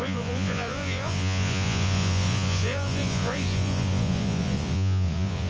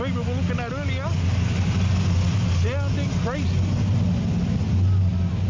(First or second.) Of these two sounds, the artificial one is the first